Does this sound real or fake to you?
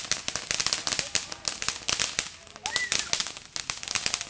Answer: real